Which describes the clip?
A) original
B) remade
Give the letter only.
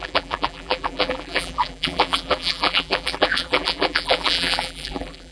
B